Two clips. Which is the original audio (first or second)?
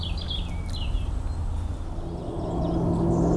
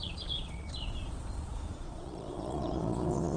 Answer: first